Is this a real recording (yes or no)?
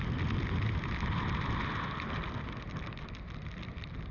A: yes